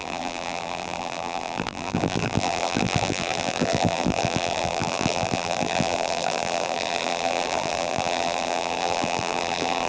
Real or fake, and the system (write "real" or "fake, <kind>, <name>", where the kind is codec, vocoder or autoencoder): fake, vocoder, BigVGAN v2